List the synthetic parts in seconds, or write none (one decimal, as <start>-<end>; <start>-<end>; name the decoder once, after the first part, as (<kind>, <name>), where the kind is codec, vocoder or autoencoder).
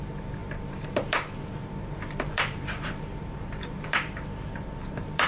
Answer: 0.0-5.3 (vocoder, BigVGAN v2)